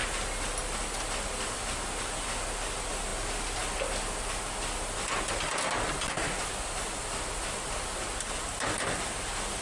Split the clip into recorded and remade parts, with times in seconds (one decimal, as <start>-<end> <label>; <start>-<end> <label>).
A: 0.0-9.6 recorded